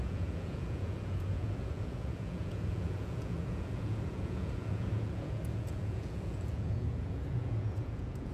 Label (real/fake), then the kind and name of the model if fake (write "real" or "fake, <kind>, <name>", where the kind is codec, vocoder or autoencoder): fake, vocoder, Vocos